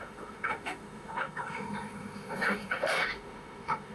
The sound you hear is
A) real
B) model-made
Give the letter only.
B